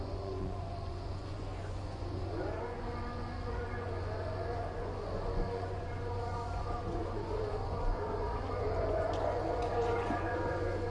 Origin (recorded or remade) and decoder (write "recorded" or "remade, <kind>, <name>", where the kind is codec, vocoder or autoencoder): remade, vocoder, Vocos